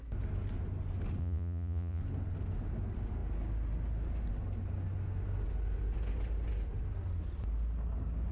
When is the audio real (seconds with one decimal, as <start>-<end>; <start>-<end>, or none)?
0.0-1.2; 2.0-8.3

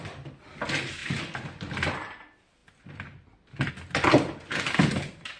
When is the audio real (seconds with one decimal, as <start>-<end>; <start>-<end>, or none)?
0.0-5.4

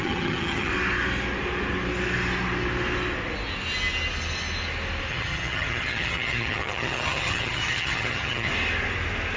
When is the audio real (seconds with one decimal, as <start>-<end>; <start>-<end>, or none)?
0.7-5.1; 8.5-9.4

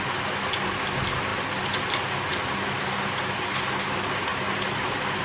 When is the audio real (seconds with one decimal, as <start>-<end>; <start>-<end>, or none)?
0.0-5.2

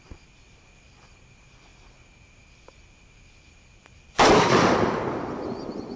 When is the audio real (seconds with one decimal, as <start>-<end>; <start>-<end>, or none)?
0.0-6.0

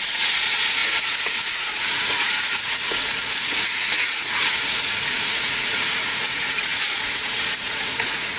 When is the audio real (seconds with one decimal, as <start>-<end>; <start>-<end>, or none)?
none

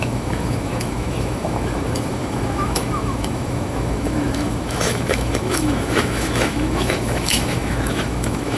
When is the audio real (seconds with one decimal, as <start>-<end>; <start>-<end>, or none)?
none

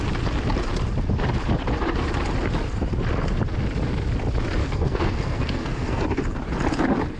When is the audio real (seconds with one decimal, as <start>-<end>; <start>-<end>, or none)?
0.0-4.6; 6.0-7.2